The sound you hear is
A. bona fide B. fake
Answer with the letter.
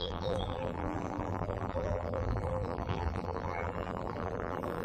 B